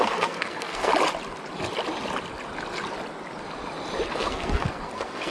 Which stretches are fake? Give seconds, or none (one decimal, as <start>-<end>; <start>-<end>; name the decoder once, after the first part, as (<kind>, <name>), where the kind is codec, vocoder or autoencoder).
0.0-0.9 (codec, SNAC); 4.1-5.3